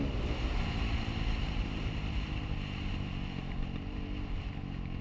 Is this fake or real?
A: real